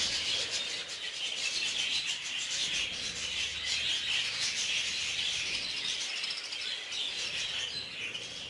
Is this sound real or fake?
real